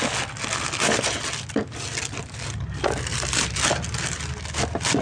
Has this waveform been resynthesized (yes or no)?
no